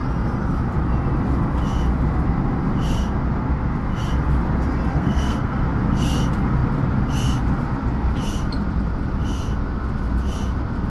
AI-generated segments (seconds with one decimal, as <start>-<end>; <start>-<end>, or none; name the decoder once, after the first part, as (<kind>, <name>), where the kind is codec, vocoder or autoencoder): 4.9-5.6 (codec, SNAC)